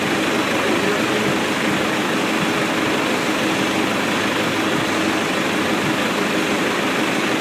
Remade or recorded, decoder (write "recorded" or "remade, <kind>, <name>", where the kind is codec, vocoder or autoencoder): recorded